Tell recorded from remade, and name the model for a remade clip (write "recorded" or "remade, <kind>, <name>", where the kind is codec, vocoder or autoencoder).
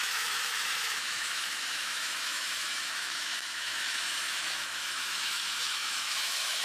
remade, autoencoder, DAC-VAE